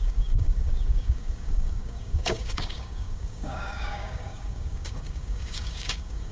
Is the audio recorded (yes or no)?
no